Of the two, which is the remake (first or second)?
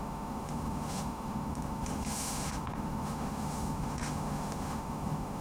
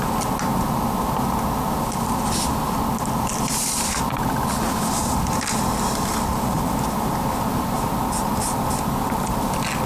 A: first